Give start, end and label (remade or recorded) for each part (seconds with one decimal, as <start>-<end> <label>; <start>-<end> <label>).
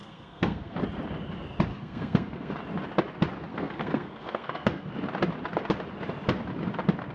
0.0-0.8 remade; 0.8-1.7 recorded; 1.7-2.5 remade; 2.5-3.5 recorded; 3.5-4.9 remade; 4.9-7.1 recorded